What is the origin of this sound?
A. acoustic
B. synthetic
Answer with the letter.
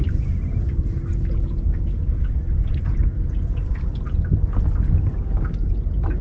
A